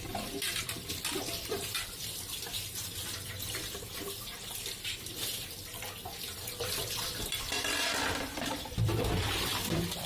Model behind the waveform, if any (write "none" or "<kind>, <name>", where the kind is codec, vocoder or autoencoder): vocoder, BigVGAN v2